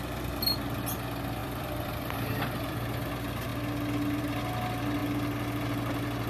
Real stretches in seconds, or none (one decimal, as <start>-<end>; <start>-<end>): 0.0-1.4; 3.1-5.0; 5.6-6.3